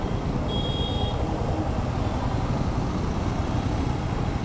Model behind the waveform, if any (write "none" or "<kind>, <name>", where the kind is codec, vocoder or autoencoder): none